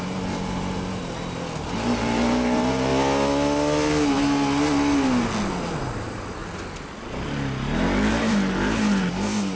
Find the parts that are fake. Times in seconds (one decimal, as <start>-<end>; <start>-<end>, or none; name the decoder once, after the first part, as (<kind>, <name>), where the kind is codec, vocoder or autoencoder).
0.0-1.0 (vocoder, BigVGAN v2); 1.7-2.9; 5.8-6.4; 8.1-9.6